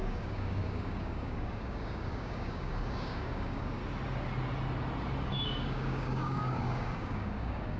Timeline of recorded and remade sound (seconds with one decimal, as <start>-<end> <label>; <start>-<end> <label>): 0.0-3.8 remade; 3.8-5.3 recorded; 5.3-7.8 remade